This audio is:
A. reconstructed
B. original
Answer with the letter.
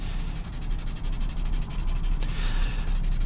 B